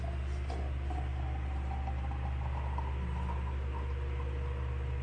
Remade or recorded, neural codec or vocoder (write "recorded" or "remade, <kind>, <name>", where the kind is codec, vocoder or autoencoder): recorded